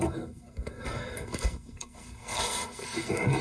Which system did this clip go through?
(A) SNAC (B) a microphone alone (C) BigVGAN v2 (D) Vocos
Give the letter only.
A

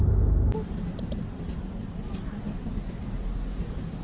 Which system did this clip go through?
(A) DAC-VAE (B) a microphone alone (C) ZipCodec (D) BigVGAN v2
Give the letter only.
B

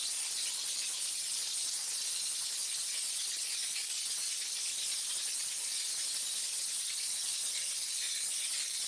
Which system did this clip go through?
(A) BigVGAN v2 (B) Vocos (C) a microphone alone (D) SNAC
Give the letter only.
C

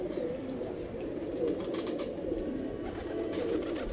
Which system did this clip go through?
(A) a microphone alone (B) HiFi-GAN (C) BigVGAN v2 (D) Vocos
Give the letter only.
A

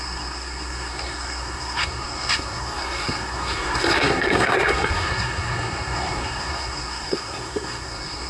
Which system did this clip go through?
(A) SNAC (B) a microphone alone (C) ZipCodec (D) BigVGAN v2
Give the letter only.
A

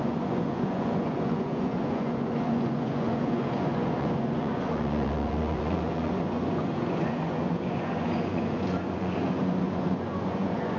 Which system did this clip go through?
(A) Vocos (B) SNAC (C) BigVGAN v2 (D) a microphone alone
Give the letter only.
A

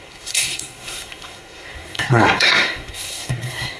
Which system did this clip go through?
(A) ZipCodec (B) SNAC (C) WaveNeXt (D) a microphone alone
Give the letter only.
B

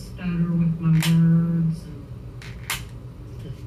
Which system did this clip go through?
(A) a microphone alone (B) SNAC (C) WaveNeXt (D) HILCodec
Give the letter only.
A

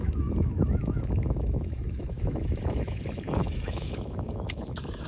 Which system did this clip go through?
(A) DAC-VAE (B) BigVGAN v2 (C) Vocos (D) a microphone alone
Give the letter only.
A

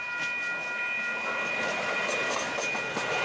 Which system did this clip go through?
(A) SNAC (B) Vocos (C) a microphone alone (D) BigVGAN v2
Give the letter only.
C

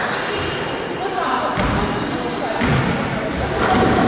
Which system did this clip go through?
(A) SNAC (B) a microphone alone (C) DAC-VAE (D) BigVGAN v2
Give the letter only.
B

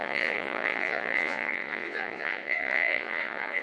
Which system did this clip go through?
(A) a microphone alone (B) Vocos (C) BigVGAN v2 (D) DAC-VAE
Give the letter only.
B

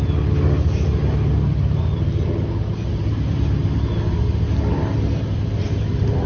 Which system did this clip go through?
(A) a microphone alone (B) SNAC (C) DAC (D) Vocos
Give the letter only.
A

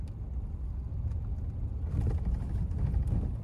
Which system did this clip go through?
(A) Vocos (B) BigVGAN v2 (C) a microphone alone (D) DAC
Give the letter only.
C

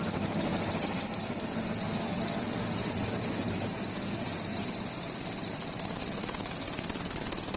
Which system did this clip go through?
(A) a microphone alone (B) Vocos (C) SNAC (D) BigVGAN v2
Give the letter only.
A